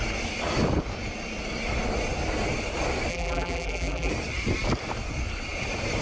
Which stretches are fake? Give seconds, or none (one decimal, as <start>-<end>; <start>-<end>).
3.1-4.1